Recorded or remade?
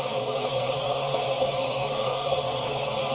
remade